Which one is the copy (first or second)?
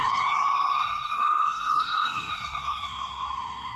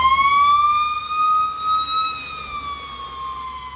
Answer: first